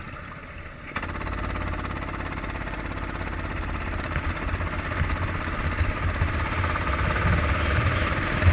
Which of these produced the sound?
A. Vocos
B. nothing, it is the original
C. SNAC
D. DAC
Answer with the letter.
B